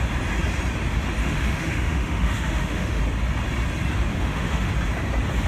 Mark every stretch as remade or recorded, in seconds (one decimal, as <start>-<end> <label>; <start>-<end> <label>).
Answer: 0.0-1.2 recorded; 1.2-3.0 remade; 3.0-4.1 recorded; 4.1-4.7 remade; 4.7-5.5 recorded